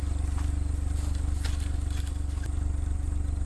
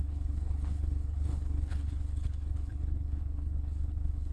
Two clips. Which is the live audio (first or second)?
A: first